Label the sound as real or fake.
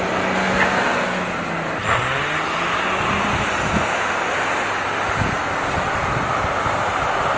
real